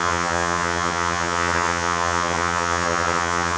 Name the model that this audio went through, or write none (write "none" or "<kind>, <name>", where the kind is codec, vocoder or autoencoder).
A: vocoder, HiFi-GAN